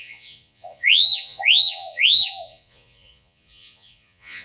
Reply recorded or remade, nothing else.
remade